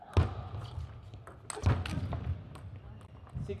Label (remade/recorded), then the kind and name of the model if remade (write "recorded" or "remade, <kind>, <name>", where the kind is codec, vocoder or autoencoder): recorded